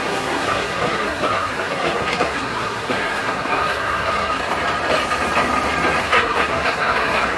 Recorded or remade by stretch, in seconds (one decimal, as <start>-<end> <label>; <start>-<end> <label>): 0.0-4.4 remade; 4.4-6.0 recorded; 6.0-7.4 remade